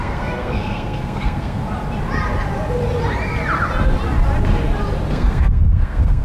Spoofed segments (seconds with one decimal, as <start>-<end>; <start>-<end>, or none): 0.0-1.6; 5.1-6.2